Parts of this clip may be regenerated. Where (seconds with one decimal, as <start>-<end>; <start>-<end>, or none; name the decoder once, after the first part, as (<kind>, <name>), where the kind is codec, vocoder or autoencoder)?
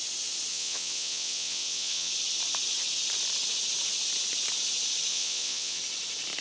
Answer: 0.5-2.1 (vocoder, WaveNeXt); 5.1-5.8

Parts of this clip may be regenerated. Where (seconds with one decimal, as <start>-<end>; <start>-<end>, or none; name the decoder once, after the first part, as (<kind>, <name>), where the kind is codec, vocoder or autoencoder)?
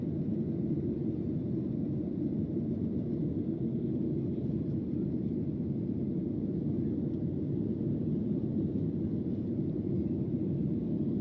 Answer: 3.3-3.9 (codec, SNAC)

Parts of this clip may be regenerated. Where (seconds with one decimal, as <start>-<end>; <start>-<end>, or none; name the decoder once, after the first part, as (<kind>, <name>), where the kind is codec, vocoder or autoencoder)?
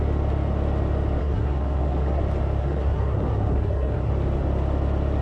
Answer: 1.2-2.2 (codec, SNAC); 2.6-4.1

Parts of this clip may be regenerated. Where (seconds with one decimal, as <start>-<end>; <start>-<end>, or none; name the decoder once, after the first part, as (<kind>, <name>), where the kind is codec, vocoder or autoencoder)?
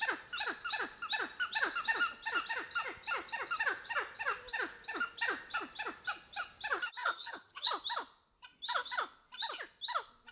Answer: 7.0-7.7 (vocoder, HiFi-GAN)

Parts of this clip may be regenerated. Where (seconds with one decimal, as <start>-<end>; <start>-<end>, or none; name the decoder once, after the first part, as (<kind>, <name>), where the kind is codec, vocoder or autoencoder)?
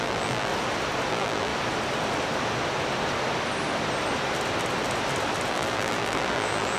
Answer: 0.0-0.5 (vocoder, BigVGAN v2); 1.1-1.5; 5.5-6.8